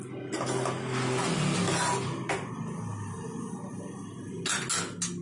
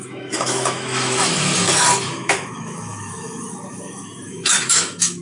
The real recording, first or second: first